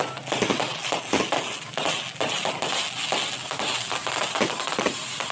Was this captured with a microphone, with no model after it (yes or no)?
yes